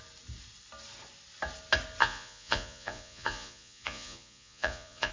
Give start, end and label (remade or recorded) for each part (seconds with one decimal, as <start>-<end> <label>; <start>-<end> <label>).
0.0-2.0 recorded; 2.0-5.1 remade